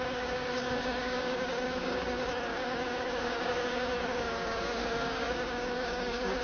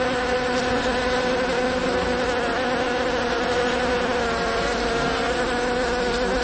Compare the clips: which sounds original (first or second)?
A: second